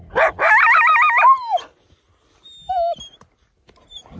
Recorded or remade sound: recorded